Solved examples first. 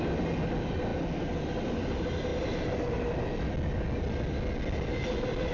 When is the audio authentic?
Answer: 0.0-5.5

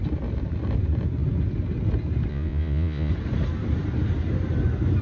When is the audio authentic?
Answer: 0.0-2.3; 3.1-5.0

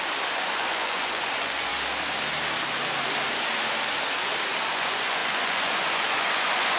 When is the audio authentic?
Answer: 1.7-4.7

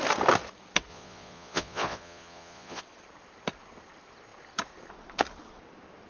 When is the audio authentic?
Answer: 0.0-0.9; 2.8-6.1

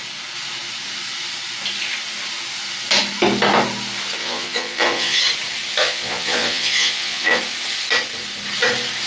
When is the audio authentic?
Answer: 0.0-4.2; 5.2-5.8; 7.4-9.1

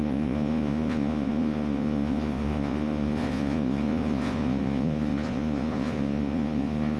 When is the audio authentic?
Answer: none